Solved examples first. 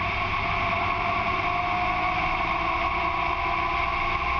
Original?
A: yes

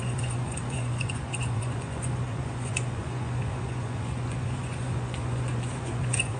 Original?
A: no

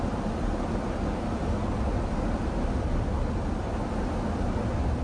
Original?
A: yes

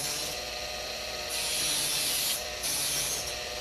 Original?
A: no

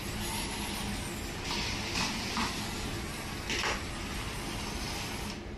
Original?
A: yes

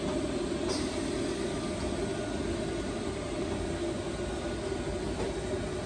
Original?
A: yes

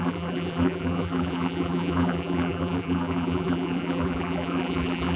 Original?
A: no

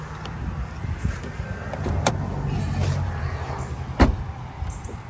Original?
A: yes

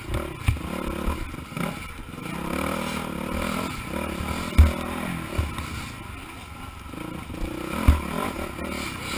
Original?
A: yes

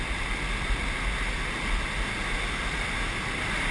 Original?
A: yes